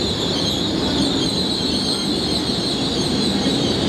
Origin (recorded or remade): recorded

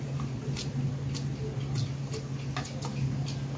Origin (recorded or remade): recorded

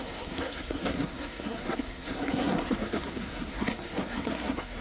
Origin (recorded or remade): remade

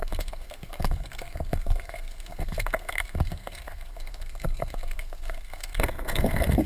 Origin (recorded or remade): remade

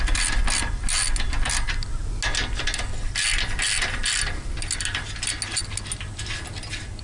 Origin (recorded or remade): recorded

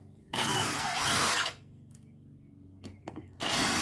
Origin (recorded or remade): remade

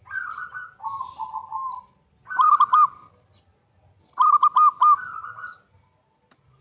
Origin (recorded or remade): recorded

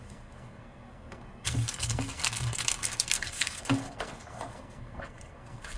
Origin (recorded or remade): remade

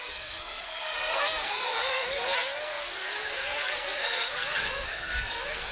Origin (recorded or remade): remade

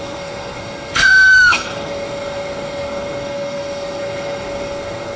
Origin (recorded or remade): remade